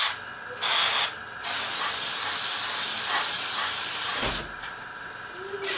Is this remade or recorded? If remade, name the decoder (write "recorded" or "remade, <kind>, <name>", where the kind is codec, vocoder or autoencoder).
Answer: recorded